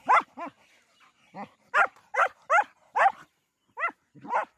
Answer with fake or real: real